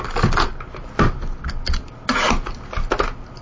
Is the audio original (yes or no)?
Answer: yes